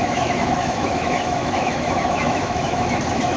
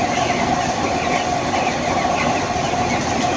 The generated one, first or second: first